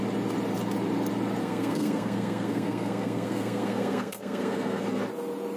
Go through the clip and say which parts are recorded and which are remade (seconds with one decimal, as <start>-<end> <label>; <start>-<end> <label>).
0.0-1.4 recorded; 1.4-4.8 remade; 4.8-5.6 recorded

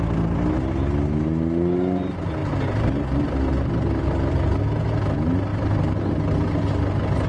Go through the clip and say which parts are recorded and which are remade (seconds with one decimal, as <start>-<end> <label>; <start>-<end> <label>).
0.0-7.3 recorded

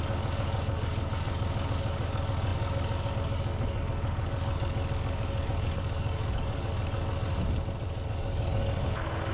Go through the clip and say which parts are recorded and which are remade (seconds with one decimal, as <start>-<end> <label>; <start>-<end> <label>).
0.0-7.4 remade; 7.4-8.1 recorded; 8.1-9.3 remade

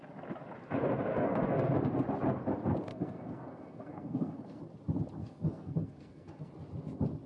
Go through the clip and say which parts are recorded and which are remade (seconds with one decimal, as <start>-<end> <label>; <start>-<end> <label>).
0.0-1.1 recorded; 1.1-1.7 remade; 1.7-2.9 recorded; 2.9-4.6 remade; 4.6-5.2 recorded; 5.2-6.5 remade; 6.5-7.3 recorded